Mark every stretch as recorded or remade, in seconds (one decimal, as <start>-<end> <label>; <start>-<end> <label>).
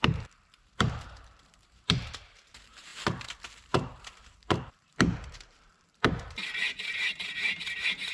0.0-2.9 remade; 2.9-3.5 recorded; 3.5-6.4 remade; 6.4-6.9 recorded; 6.9-8.1 remade